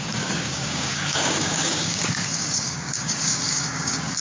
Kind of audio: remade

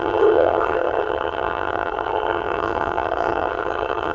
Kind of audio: remade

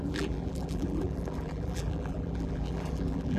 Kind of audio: remade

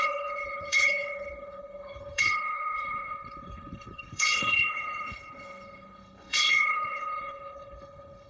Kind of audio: remade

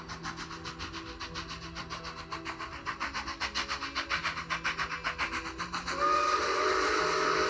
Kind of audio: recorded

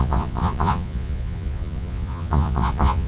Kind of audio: remade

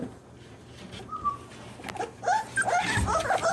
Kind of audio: recorded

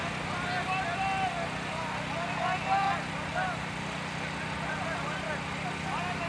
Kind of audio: recorded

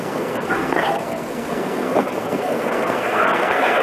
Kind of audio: remade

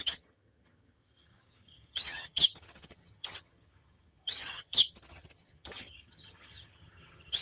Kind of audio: remade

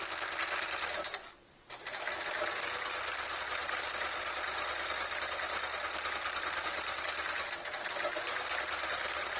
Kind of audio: recorded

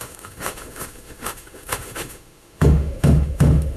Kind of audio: remade